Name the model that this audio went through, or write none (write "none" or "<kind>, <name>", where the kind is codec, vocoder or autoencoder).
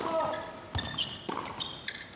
none